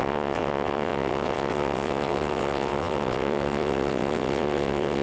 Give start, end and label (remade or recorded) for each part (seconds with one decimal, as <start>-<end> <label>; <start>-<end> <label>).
0.0-5.0 remade